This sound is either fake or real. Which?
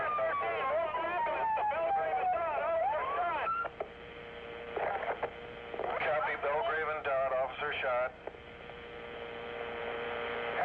real